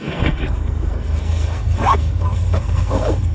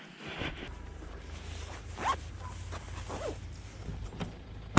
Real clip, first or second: second